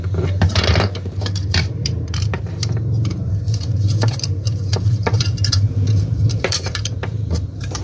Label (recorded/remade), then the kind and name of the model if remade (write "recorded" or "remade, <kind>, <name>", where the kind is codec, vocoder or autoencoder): remade, vocoder, BigVGAN v2